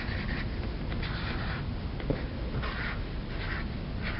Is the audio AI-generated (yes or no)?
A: no